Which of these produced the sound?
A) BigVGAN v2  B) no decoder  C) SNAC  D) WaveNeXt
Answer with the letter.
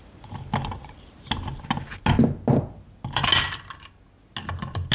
B